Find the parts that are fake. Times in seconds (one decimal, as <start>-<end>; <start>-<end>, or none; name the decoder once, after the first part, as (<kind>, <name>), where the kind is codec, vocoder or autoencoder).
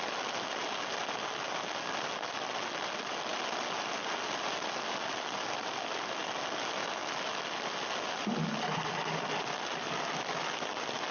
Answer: none